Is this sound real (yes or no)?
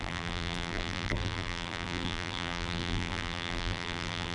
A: no